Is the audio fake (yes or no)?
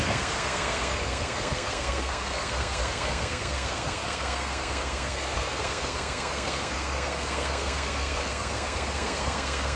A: yes